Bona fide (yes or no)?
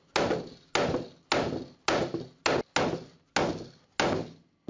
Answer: yes